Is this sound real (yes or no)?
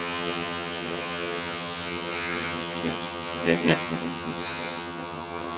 no